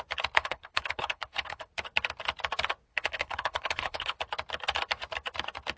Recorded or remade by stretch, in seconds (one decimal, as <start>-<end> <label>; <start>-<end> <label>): 0.0-0.4 recorded; 0.4-1.7 remade; 1.7-2.9 recorded; 2.9-4.2 remade; 4.2-5.8 recorded